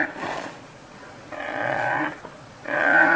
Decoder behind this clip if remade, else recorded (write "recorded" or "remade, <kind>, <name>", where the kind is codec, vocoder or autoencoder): remade, vocoder, Vocos